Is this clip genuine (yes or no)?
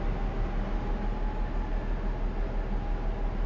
yes